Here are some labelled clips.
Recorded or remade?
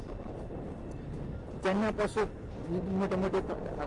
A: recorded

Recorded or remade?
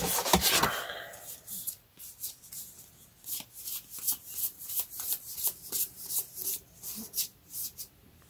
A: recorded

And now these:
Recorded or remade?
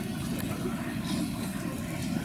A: recorded